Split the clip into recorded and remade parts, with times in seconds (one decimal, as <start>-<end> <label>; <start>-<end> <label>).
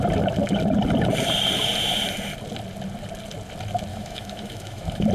0.0-3.9 recorded; 3.9-5.1 remade